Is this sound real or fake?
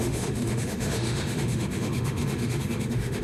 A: fake